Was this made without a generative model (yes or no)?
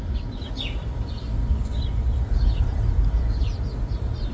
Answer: no